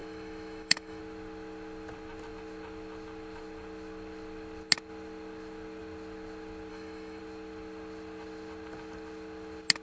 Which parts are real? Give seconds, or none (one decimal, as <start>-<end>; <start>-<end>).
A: 1.0-6.7; 7.2-9.8